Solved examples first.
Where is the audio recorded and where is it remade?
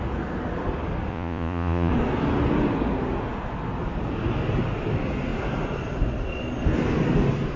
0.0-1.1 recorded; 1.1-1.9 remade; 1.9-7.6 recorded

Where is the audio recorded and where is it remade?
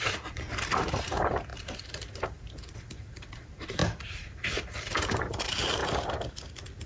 0.0-5.8 remade; 5.8-6.9 recorded